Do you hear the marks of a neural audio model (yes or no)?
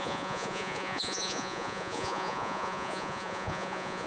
yes